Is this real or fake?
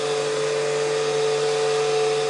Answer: real